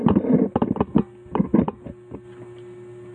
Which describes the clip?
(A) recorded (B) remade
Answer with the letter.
A